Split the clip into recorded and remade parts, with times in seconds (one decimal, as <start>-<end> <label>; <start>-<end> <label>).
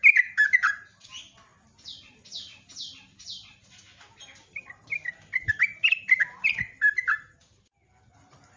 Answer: 0.0-8.6 recorded